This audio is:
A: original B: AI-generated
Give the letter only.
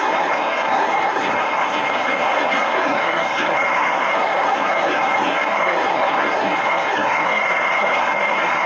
B